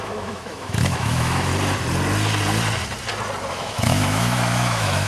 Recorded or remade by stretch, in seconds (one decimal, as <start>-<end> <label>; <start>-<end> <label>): 0.0-1.5 remade; 1.5-3.5 recorded; 3.5-5.1 remade